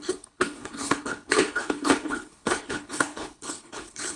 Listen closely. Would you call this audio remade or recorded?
remade